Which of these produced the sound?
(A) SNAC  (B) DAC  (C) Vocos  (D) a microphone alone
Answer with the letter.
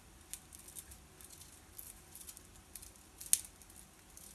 D